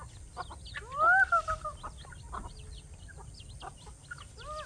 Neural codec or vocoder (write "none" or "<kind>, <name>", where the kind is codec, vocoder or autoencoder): none